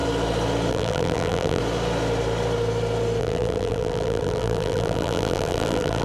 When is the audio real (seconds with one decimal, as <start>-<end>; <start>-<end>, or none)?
0.0-0.7; 1.6-3.2